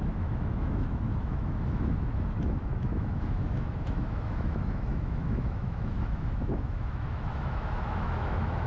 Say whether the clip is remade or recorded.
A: remade